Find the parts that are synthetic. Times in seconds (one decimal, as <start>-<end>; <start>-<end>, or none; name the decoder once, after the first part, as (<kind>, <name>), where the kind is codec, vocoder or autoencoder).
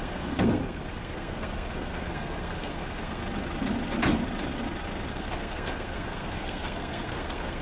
0.0-3.2 (codec, SNAC); 5.1-7.6